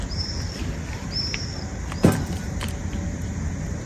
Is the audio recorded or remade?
recorded